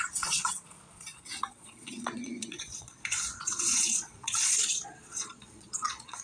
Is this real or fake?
fake